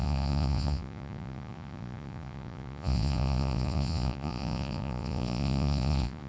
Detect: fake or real fake